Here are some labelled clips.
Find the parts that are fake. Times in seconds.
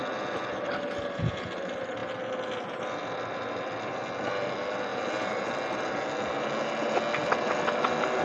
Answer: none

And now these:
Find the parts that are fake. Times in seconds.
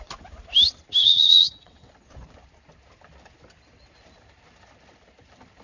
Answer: 1.0-1.9 (vocoder, WaveNeXt)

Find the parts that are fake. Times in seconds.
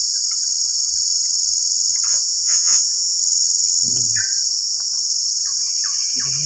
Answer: 2.1-3.2 (vocoder, WaveNeXt)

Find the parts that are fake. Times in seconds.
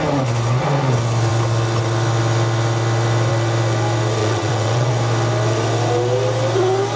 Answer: 4.2-4.9 (vocoder, WaveNeXt)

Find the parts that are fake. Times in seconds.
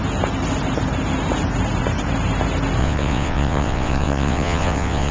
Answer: 2.8-5.1 (vocoder, WaveNeXt)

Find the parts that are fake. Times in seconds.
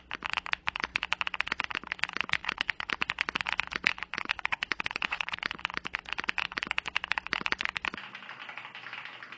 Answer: 2.4-2.9 (vocoder, WaveNeXt); 3.9-5.6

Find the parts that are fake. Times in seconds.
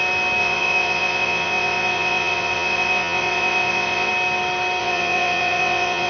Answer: 0.4-4.1 (vocoder, WaveNeXt); 4.8-6.1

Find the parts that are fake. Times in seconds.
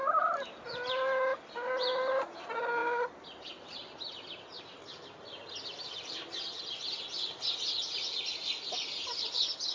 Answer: none